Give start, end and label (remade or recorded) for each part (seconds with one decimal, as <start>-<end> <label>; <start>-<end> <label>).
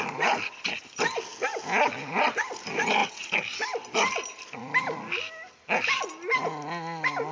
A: 0.0-7.3 recorded